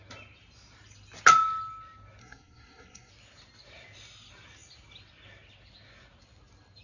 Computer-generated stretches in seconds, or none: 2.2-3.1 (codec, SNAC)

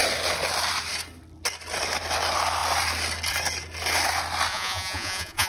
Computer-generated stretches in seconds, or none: 4.5-5.5 (vocoder, Vocos)